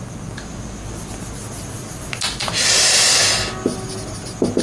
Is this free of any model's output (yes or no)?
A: yes